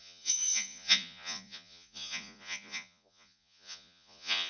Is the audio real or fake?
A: fake